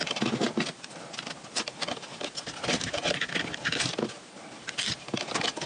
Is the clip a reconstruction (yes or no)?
no